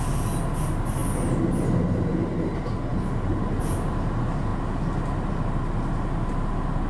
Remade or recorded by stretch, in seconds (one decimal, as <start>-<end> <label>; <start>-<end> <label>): 0.0-6.9 recorded